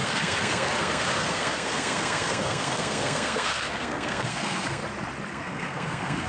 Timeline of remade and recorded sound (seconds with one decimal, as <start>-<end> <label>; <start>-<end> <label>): 0.0-4.8 remade; 4.8-5.3 recorded; 5.3-6.3 remade